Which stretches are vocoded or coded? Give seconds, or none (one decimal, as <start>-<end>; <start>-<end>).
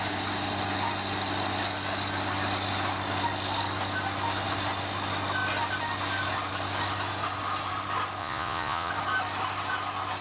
8.2-8.9